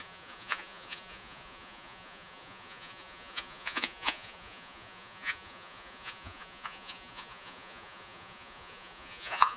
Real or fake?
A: fake